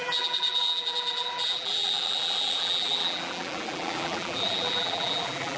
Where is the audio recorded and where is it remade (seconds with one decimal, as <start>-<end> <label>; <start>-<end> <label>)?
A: 0.0-5.6 remade